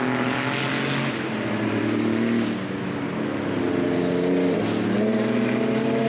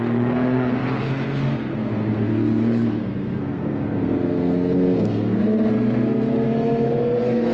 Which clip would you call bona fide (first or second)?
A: first